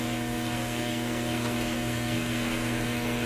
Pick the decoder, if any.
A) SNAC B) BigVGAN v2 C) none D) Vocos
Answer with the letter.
A